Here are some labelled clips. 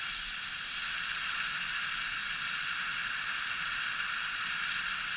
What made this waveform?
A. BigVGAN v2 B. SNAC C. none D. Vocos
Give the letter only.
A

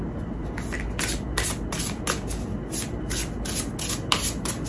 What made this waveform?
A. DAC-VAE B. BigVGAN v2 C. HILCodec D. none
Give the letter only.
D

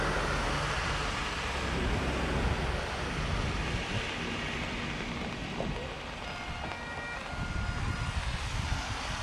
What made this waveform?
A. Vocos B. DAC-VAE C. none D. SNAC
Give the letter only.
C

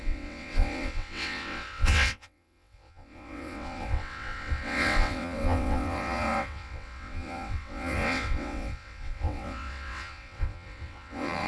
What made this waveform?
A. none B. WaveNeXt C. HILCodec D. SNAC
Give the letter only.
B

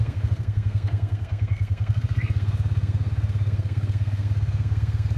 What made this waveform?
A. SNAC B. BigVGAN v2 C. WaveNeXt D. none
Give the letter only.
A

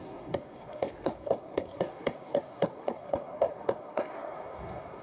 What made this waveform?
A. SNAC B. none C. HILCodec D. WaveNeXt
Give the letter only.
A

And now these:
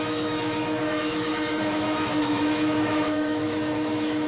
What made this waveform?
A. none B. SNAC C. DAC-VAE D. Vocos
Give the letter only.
C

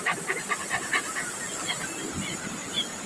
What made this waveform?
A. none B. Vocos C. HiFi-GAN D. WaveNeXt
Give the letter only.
A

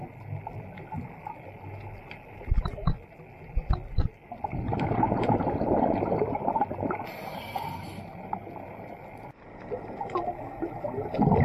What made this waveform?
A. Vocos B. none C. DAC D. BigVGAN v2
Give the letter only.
B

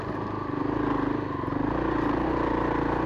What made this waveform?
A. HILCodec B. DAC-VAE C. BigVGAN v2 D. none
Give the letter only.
D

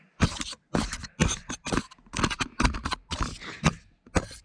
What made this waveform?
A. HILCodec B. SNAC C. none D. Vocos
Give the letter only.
C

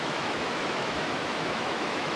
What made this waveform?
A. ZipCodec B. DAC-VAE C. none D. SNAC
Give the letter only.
B